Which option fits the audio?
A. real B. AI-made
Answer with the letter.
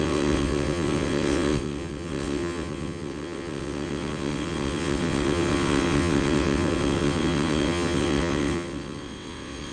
B